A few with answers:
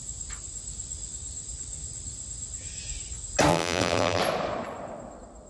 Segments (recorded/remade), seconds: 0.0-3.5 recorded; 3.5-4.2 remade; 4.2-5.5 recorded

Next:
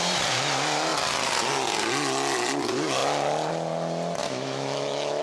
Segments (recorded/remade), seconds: 0.0-4.2 recorded; 4.2-5.2 remade